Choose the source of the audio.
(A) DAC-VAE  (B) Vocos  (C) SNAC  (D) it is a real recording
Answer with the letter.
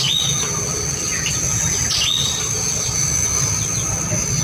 D